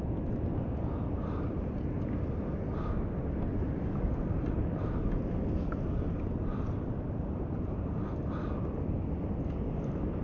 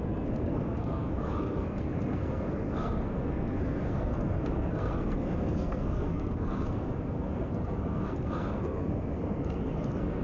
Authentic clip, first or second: first